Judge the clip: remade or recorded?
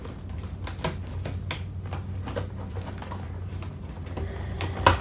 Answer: recorded